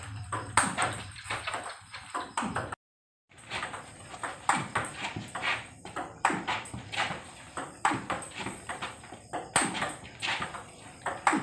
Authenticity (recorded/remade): remade